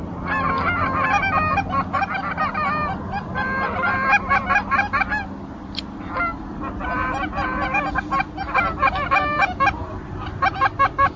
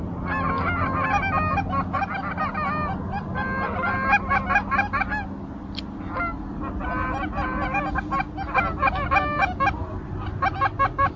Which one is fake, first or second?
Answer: first